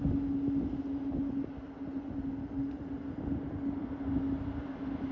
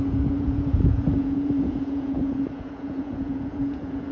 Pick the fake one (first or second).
second